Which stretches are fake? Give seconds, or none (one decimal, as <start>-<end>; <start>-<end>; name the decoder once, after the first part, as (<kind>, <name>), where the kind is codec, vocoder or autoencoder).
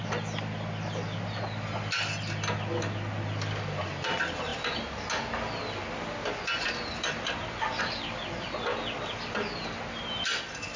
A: none